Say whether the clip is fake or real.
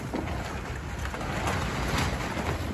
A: real